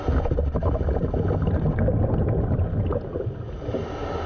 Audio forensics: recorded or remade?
recorded